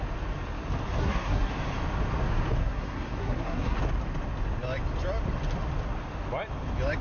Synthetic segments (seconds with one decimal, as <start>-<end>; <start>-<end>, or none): 1.0-1.5; 2.6-3.8